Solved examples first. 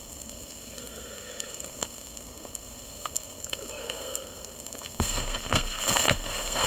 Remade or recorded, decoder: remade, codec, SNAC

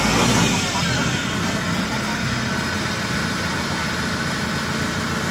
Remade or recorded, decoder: recorded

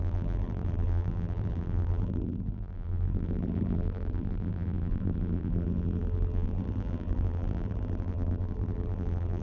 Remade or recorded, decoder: remade, vocoder, BigVGAN v2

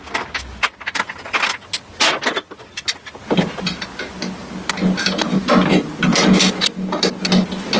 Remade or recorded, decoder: recorded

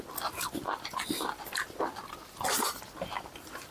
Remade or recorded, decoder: recorded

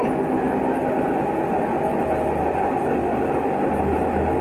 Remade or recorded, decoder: recorded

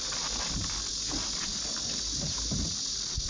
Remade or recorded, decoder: recorded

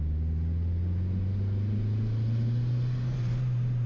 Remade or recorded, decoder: recorded